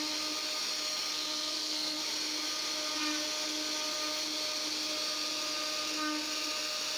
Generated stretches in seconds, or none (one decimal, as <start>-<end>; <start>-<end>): 1.1-2.0